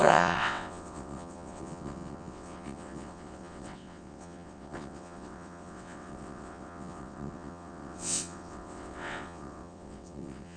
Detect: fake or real fake